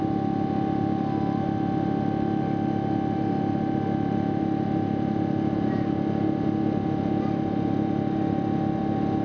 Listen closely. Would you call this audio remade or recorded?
recorded